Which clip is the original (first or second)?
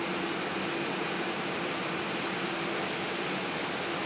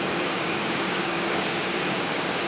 first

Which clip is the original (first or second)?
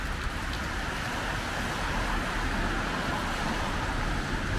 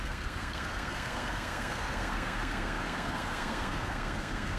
first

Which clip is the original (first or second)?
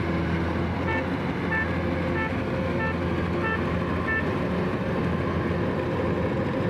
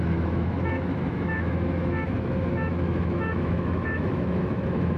first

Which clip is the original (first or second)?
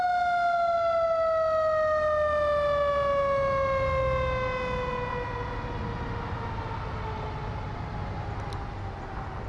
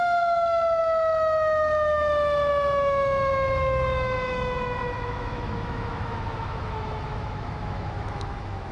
first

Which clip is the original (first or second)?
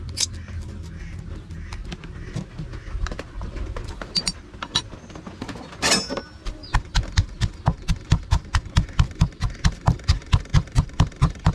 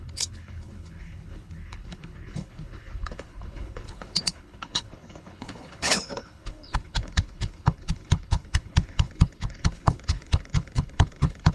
first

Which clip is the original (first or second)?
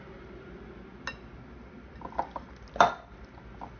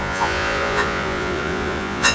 first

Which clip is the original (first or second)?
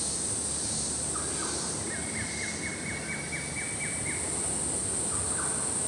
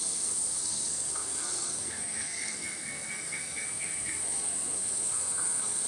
first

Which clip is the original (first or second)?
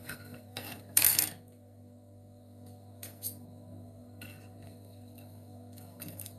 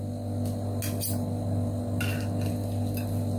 second